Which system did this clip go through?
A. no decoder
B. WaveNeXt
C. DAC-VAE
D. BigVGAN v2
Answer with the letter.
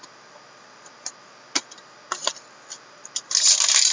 A